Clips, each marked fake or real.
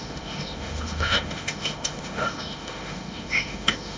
fake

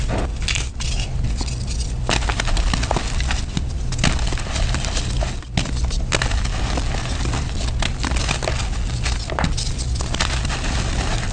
real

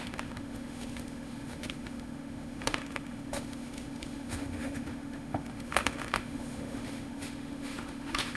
fake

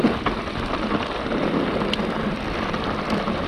real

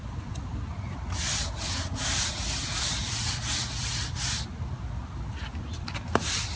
real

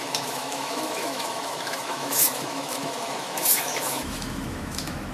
fake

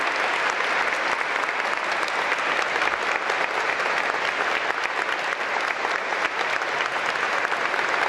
real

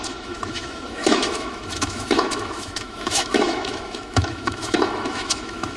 fake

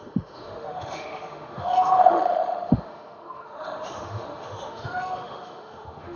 fake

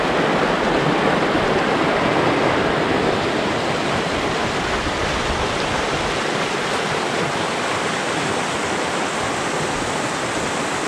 real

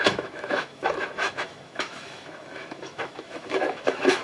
fake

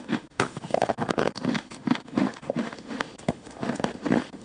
fake